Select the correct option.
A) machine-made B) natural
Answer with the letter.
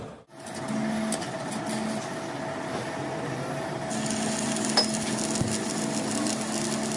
B